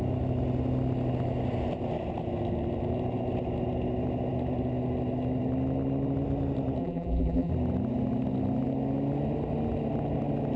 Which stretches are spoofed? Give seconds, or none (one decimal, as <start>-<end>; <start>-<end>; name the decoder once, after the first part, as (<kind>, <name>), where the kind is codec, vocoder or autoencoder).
6.8-7.5 (vocoder, BigVGAN v2)